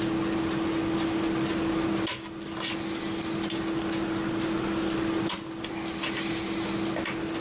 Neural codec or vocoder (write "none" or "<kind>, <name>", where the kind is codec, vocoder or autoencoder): none